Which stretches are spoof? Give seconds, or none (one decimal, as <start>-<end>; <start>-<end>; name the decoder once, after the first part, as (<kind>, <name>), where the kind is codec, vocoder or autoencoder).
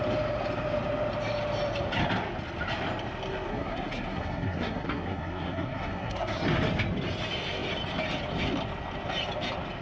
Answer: 3.5-6.4 (codec, SNAC)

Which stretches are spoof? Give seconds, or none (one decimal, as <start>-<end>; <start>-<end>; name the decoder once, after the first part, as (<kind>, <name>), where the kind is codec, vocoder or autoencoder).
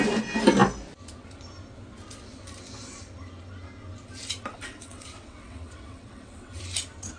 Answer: 4.5-6.6 (vocoder, WaveNeXt)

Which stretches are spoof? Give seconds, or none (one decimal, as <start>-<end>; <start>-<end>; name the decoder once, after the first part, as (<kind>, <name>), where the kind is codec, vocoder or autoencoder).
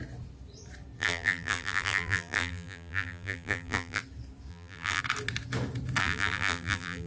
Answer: 1.0-4.0 (vocoder, BigVGAN v2); 4.5-5.0; 6.0-7.1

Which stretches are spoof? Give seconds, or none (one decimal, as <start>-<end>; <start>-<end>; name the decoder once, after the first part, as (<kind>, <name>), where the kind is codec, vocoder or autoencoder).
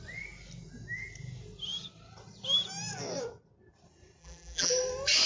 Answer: 4.2-4.7 (vocoder, BigVGAN v2)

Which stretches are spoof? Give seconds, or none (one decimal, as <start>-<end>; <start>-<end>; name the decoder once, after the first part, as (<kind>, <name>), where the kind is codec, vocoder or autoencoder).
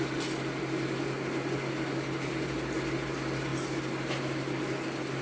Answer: none